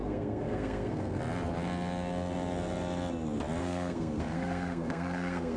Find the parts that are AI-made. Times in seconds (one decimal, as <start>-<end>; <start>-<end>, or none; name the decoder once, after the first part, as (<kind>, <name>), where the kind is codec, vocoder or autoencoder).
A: 0.0-1.2 (codec, SNAC); 3.6-5.6